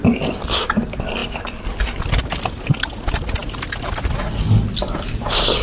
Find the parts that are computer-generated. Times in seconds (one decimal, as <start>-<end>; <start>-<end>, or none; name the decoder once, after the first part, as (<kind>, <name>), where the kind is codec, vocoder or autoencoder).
none